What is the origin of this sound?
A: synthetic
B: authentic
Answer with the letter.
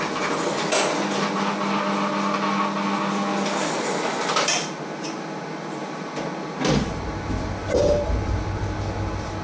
B